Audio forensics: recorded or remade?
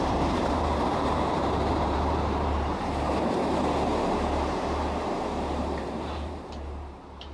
remade